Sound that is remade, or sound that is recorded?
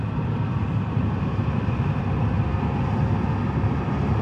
recorded